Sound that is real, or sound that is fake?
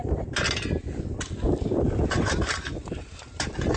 fake